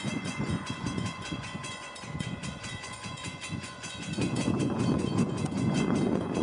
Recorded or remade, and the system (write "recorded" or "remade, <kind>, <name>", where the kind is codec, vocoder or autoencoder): remade, vocoder, Vocos